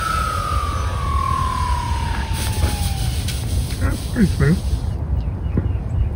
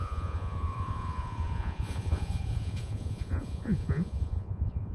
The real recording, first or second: first